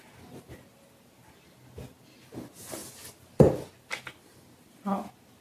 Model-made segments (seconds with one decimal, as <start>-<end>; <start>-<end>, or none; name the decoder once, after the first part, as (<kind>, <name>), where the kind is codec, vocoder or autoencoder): 3.9-4.8 (vocoder, BigVGAN v2)